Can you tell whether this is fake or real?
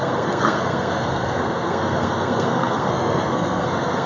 fake